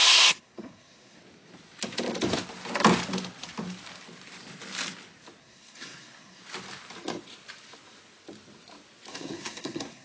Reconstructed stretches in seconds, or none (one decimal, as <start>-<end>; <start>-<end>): 0.0-1.2; 5.4-6.4; 9.1-10.0